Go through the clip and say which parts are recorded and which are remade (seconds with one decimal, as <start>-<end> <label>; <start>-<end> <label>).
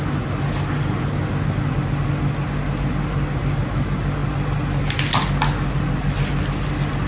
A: 0.0-7.1 recorded